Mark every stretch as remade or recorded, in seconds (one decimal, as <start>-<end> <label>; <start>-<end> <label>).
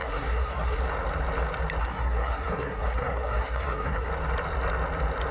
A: 0.0-0.8 remade; 0.8-1.8 recorded; 1.8-4.1 remade; 4.1-5.3 recorded